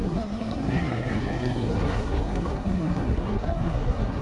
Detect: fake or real fake